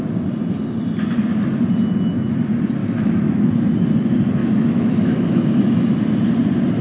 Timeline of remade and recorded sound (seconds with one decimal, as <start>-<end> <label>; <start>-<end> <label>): 0.0-2.8 recorded; 2.8-3.5 remade; 3.5-4.4 recorded; 4.4-5.7 remade; 5.7-6.8 recorded